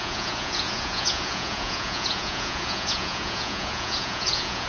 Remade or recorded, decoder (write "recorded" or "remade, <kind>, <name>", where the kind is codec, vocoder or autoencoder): remade, vocoder, Vocos